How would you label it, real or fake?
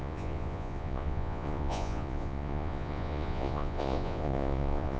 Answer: fake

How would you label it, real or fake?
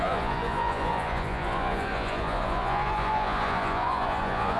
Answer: fake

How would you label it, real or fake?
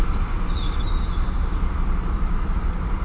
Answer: real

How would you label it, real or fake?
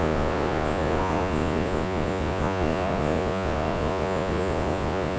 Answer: fake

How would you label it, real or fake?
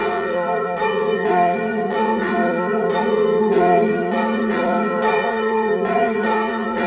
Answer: fake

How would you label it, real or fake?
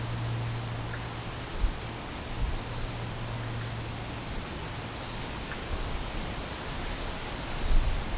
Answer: real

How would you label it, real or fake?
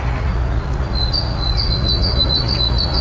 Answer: fake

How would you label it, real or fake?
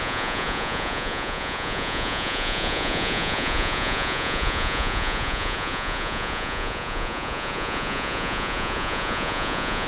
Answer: fake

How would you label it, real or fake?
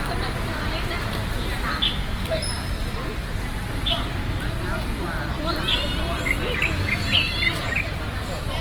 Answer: real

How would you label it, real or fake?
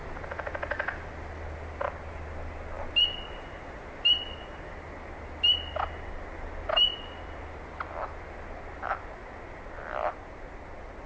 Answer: real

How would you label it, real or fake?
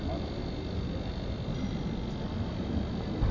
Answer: real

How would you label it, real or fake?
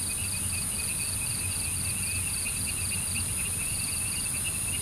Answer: real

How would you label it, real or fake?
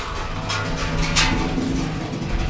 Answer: real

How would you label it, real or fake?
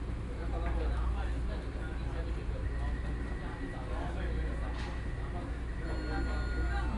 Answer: real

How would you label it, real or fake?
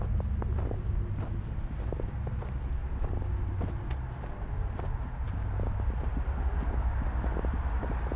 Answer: real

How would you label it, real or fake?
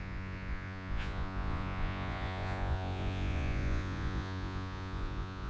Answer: fake